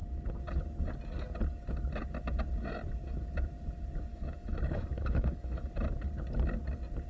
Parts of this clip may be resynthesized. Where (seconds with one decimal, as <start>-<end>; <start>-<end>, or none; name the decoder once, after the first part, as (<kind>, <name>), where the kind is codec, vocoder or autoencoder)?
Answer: 4.1-5.7 (autoencoder, DAC-VAE)